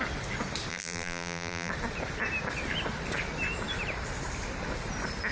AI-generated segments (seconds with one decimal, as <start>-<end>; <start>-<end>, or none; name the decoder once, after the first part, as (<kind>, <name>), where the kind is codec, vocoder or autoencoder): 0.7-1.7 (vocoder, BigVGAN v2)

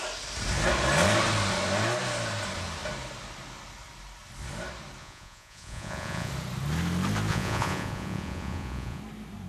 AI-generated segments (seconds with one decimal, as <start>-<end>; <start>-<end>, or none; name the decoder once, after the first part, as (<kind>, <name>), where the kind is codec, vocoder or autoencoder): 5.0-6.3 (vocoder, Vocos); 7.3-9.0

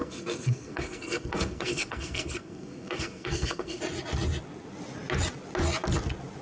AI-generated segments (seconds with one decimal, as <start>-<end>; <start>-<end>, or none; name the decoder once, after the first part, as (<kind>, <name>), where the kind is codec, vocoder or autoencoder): 0.0-3.8 (codec, SNAC)

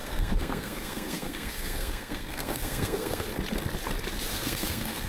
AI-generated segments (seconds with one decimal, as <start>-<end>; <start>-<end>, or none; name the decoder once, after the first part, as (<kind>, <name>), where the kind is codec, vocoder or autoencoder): 0.0-3.3 (codec, SNAC); 4.3-5.1

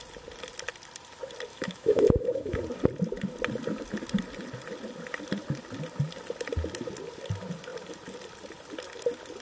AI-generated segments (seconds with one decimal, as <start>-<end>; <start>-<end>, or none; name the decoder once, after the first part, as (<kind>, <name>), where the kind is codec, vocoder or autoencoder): 1.5-2.6 (autoencoder, DAC-VAE)

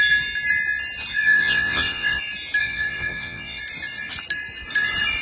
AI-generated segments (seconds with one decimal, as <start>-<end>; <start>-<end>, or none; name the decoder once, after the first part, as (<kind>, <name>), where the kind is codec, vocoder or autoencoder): 1.1-2.2 (vocoder, WaveNeXt); 2.6-3.6

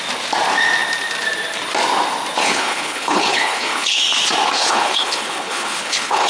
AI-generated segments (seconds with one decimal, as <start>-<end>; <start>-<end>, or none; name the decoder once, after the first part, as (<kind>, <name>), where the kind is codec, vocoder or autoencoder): 2.4-4.0 (codec, HILCodec); 4.6-6.3